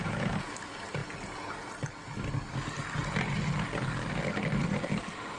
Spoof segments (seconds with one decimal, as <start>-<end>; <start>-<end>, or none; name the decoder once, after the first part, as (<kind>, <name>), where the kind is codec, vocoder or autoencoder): 0.0-0.5 (vocoder, Vocos)

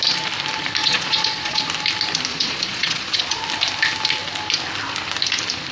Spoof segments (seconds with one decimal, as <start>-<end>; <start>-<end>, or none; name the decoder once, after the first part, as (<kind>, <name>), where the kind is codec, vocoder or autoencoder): 0.8-1.6 (vocoder, Vocos); 2.3-3.4

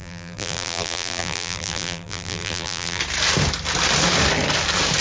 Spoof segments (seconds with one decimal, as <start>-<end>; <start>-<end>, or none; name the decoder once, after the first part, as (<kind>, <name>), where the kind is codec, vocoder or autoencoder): 0.0-3.0 (vocoder, BigVGAN v2)